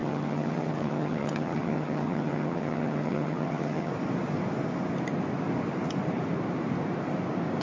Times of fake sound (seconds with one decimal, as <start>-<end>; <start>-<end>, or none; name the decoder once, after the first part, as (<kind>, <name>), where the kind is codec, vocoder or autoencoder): 0.0-3.9 (vocoder, HiFi-GAN)

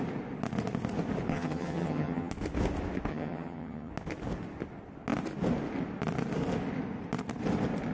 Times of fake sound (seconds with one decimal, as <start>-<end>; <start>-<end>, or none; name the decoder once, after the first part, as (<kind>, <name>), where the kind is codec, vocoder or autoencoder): 1.3-2.3 (vocoder, HiFi-GAN); 3.1-3.9

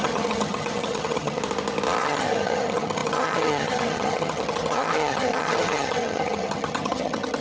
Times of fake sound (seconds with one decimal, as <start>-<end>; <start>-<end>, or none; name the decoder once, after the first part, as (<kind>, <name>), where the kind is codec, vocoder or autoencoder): 0.0-1.4 (vocoder, HiFi-GAN); 2.0-7.4

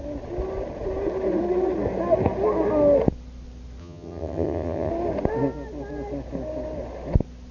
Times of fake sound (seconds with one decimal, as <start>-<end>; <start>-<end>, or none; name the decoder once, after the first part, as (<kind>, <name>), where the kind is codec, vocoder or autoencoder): 3.8-4.9 (vocoder, HiFi-GAN)